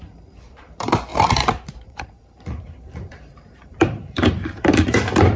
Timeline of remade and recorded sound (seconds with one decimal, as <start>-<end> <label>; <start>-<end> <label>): 0.0-1.1 remade; 1.1-1.7 recorded; 1.7-5.4 remade